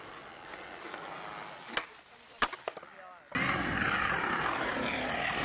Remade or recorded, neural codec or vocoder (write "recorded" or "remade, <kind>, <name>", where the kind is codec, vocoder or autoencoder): recorded